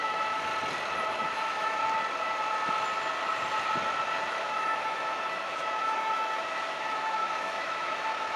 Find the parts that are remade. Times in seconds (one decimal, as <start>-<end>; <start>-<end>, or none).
0.0-0.5; 1.1-1.8; 4.3-8.4